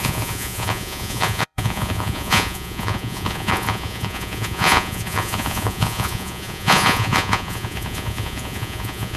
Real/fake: fake